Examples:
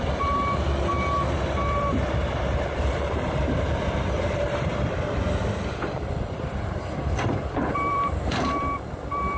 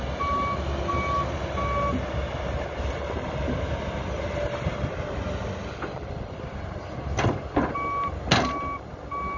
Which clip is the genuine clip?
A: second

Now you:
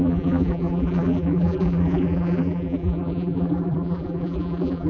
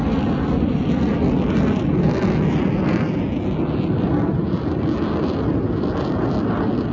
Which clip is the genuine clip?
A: second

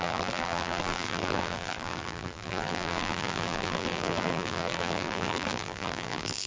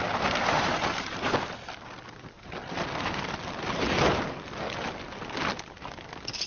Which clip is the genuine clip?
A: second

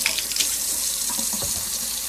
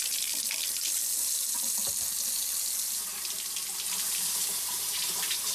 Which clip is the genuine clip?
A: second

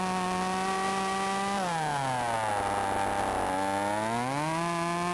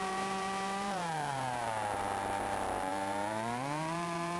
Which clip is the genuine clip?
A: first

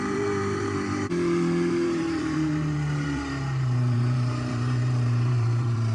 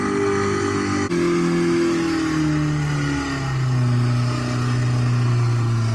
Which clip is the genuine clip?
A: second